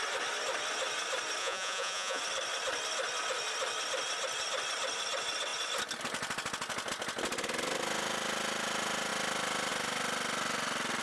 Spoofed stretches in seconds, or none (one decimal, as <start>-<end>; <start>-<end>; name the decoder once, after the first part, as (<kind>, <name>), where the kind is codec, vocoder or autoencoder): 1.4-2.2 (vocoder, Vocos)